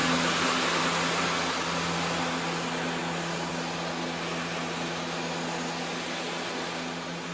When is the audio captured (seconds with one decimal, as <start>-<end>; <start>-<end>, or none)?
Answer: 0.0-7.3

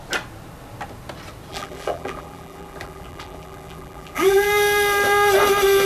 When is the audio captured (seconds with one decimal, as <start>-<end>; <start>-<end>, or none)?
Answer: 0.0-1.5; 4.5-5.9

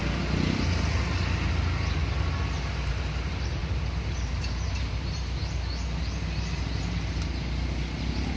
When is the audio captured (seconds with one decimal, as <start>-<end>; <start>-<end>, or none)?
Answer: 0.0-3.6; 5.5-8.4